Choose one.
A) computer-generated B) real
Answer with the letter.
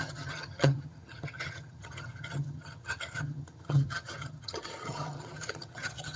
A